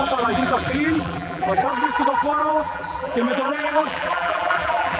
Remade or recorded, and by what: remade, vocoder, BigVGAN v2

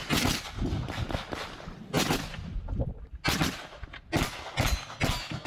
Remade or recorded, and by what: recorded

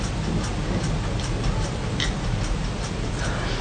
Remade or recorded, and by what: recorded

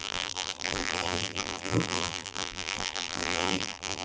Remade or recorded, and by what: remade, vocoder, BigVGAN v2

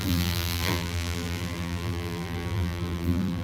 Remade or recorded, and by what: remade, vocoder, BigVGAN v2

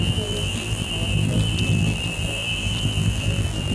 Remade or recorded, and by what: remade, vocoder, BigVGAN v2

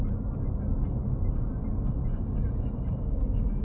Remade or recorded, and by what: recorded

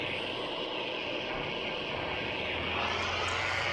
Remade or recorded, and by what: recorded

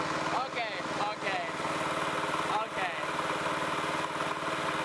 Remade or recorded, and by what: recorded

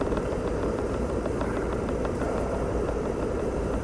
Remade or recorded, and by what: remade, vocoder, BigVGAN v2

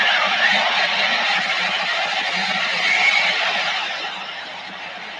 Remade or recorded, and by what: remade, vocoder, BigVGAN v2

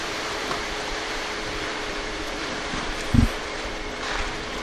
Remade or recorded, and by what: remade, vocoder, BigVGAN v2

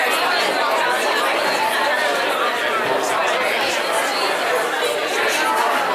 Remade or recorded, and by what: recorded